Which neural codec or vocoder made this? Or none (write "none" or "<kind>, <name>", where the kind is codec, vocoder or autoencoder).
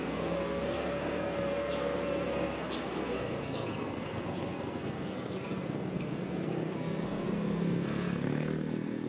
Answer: codec, SNAC